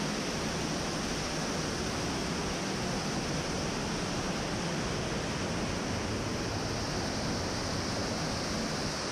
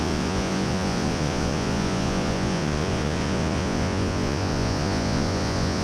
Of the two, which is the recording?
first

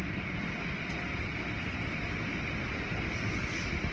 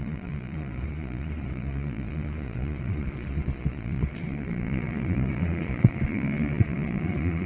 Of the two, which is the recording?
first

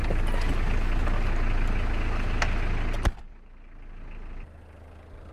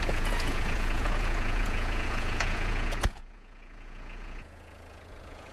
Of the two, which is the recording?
first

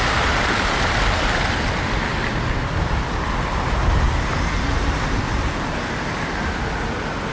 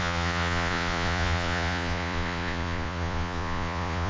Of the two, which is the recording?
first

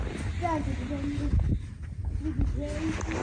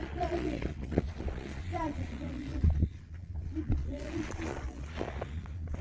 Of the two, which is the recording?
first